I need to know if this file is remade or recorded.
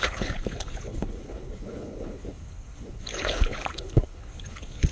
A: remade